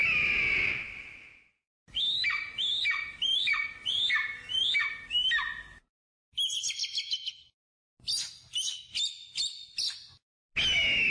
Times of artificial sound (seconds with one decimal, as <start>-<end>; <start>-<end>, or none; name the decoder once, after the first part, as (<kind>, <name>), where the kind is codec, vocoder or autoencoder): none